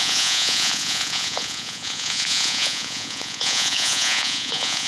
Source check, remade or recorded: remade